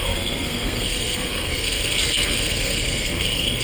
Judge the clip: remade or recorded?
remade